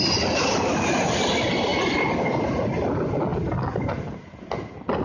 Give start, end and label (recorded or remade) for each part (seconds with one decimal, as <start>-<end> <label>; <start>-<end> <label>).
0.0-5.0 recorded